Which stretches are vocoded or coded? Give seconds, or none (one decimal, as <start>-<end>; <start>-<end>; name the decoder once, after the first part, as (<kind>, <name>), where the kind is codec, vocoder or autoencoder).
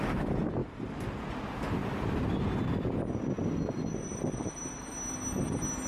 none